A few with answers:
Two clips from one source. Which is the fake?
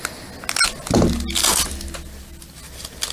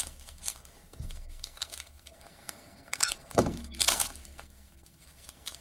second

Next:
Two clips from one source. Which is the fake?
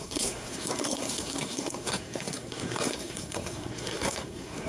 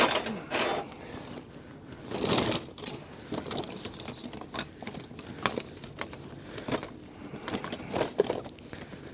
first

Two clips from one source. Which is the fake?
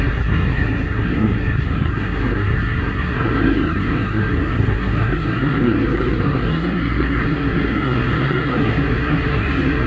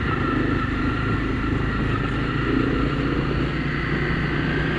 first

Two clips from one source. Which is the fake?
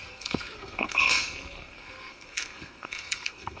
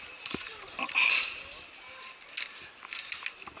first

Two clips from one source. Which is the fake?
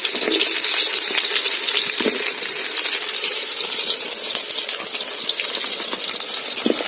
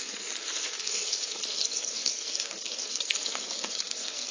second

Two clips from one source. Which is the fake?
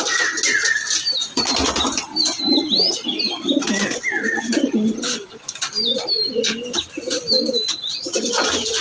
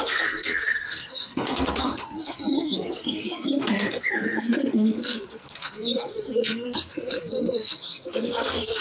second